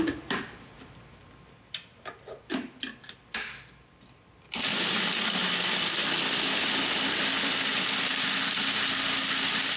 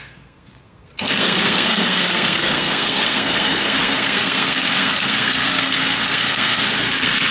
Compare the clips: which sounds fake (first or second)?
second